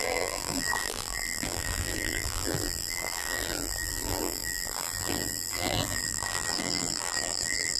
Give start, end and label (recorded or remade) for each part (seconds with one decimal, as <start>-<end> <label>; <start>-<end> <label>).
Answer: 0.0-7.8 remade

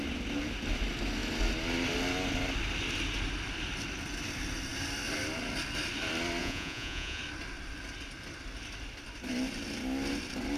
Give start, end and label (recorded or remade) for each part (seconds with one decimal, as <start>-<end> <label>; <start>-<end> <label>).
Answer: 0.0-6.4 recorded; 6.4-7.2 remade; 7.2-10.6 recorded

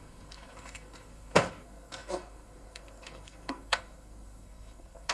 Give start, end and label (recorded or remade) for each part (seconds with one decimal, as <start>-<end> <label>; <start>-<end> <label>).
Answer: 0.0-5.1 remade

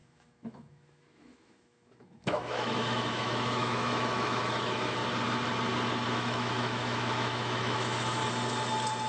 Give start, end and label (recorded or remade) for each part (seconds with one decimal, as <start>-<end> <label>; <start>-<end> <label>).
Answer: 0.0-5.0 remade; 5.0-6.1 recorded; 6.1-8.2 remade; 8.2-9.1 recorded